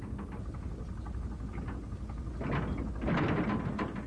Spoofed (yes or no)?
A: no